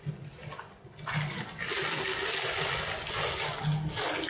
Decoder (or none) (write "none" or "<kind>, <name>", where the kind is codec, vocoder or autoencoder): none